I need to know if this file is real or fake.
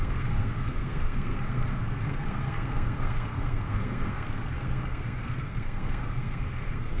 fake